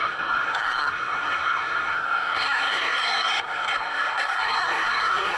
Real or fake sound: fake